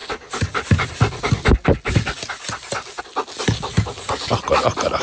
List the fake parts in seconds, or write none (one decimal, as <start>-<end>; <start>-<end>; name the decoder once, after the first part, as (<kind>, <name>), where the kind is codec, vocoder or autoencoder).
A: none